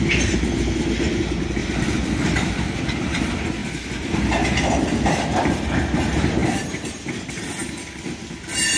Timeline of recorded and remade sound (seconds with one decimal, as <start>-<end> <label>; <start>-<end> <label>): 0.0-1.6 recorded; 1.6-3.2 remade; 3.2-3.6 recorded; 3.6-5.6 remade; 5.6-6.4 recorded; 6.4-7.7 remade; 7.7-8.8 recorded